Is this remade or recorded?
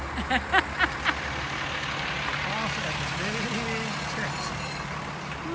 recorded